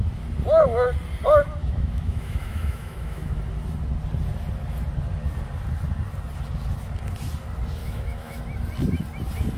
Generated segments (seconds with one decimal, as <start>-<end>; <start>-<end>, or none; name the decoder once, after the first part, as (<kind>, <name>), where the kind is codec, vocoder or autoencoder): 1.6-3.4 (autoencoder, DAC-VAE); 7.8-8.4